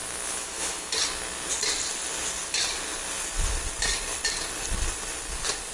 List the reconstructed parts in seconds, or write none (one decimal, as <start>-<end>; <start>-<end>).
0.0-0.9